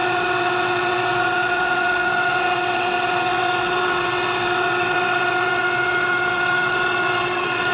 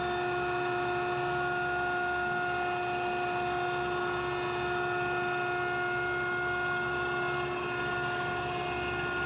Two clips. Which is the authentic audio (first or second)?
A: second